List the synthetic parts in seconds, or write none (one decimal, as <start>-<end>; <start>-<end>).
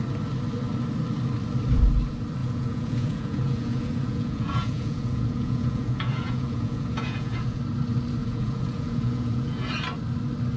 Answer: 2.4-7.6; 8.2-9.7